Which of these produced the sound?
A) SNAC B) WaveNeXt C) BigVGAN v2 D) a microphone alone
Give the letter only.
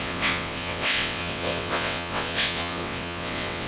B